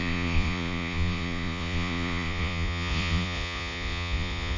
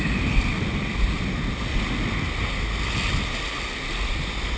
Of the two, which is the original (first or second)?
second